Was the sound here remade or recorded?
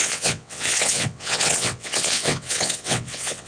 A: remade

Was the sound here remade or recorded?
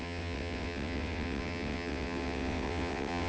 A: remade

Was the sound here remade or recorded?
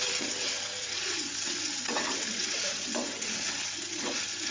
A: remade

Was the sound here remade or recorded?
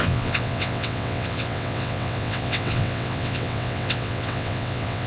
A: remade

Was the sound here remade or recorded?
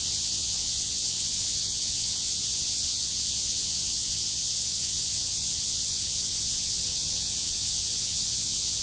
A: remade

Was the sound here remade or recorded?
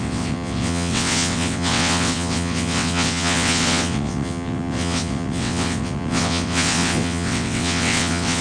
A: remade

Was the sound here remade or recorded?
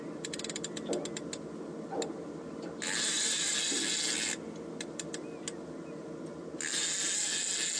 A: recorded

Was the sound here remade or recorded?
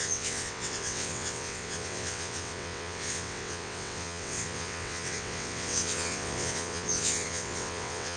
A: remade